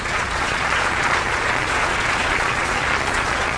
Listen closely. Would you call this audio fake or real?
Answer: fake